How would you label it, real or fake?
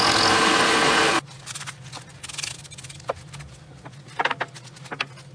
real